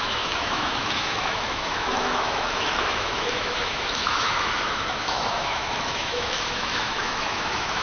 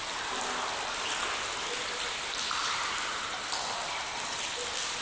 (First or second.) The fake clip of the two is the first